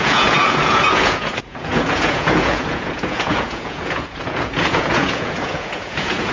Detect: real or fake fake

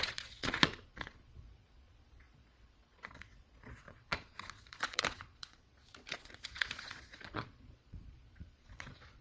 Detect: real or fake fake